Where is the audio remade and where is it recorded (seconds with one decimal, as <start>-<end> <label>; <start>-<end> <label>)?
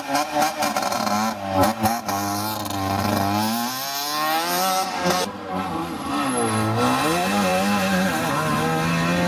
0.0-9.3 recorded